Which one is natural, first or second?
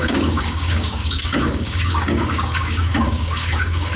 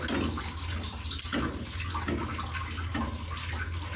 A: second